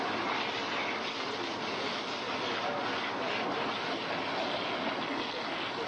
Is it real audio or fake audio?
real